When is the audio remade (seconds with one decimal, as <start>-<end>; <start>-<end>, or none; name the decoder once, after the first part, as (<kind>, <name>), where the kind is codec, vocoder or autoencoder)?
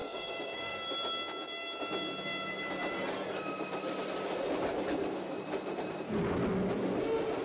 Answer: 0.0-0.9 (codec, DAC)